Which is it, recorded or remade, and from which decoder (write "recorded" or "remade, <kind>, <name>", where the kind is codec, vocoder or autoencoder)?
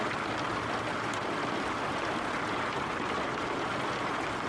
recorded